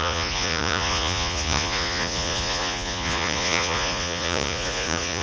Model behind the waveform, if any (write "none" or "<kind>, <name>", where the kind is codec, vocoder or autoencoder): vocoder, Vocos